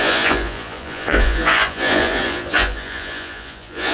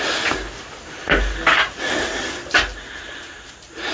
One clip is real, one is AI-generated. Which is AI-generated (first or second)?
first